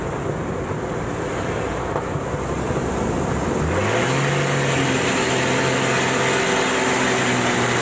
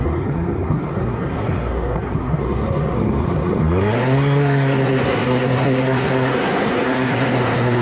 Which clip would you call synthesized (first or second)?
second